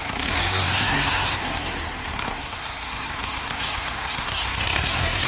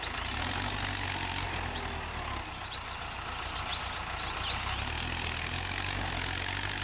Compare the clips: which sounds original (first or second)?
second